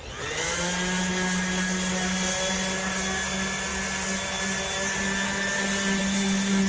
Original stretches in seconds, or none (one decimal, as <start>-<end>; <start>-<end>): 0.0-6.7